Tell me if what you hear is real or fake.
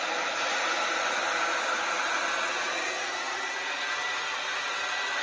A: real